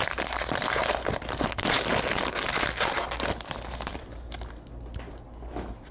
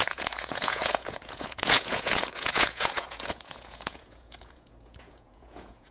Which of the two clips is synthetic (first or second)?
second